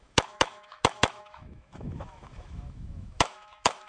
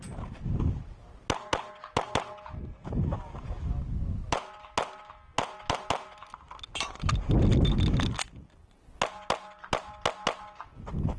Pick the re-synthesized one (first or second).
first